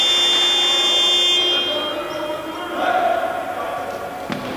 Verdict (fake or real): real